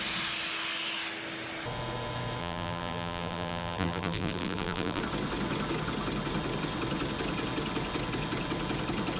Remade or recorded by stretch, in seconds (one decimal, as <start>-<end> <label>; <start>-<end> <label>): 0.0-2.4 recorded; 2.4-5.0 remade; 5.0-9.2 recorded